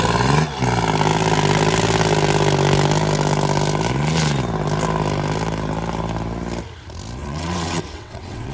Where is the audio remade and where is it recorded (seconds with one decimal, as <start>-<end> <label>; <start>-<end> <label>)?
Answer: 0.0-7.2 recorded; 7.2-8.5 remade